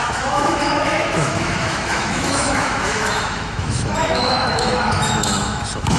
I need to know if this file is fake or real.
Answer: fake